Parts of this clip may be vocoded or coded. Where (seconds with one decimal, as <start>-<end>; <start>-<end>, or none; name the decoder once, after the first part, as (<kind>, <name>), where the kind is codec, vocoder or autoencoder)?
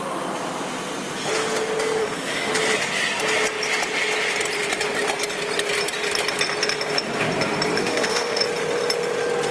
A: 2.0-2.5 (autoencoder, DAC-VAE); 7.8-8.4